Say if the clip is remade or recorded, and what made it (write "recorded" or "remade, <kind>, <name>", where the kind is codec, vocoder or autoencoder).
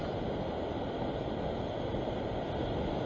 recorded